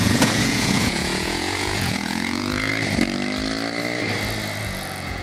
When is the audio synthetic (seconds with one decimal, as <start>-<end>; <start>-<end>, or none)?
0.0-2.7; 4.6-5.2